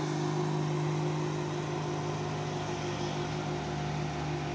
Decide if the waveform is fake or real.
real